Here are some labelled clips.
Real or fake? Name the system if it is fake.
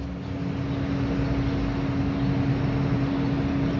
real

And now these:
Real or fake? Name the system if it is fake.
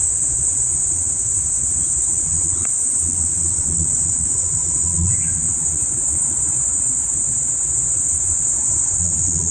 fake, vocoder, Vocos